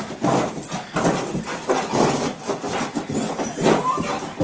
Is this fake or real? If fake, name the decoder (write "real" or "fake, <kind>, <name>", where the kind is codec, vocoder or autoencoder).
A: real